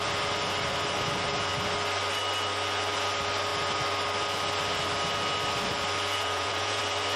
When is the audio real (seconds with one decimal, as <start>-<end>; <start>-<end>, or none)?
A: 0.0-6.2; 6.8-7.2